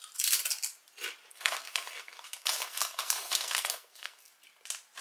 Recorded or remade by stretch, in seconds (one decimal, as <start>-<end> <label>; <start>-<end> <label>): 0.0-1.3 recorded; 1.3-4.3 remade; 4.3-5.0 recorded